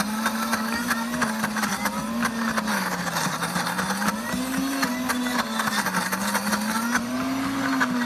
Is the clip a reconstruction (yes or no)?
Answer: no